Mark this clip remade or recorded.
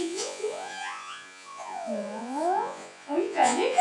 remade